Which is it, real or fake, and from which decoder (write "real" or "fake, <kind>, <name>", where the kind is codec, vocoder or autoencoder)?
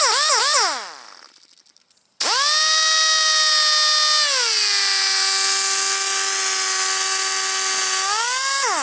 real